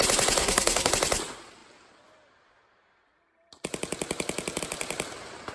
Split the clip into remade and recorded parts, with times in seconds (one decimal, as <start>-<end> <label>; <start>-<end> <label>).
0.0-0.4 recorded; 0.4-0.9 remade; 0.9-5.5 recorded